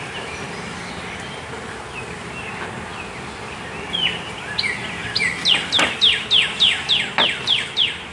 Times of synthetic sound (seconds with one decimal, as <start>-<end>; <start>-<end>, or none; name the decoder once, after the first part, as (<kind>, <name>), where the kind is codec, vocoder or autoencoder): none